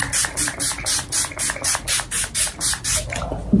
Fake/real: real